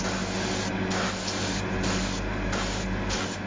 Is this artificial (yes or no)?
no